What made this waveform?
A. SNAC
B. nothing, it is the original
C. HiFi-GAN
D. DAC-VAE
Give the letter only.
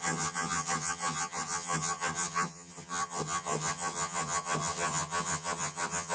C